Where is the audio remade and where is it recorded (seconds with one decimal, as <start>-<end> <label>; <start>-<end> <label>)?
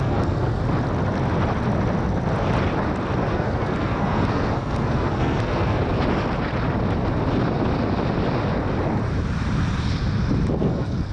0.0-0.6 remade; 0.6-3.3 recorded; 3.3-5.8 remade; 5.8-10.5 recorded; 10.5-11.1 remade